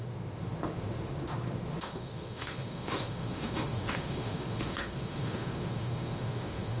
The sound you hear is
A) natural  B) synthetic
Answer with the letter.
B